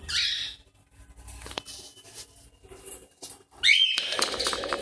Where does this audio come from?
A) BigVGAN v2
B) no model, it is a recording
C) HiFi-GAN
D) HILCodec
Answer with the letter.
B